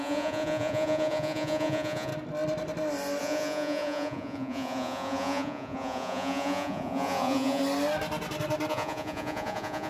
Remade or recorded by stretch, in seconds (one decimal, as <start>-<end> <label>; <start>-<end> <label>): 0.0-2.1 remade; 2.1-3.2 recorded; 3.2-7.6 remade; 7.6-8.7 recorded; 8.7-9.9 remade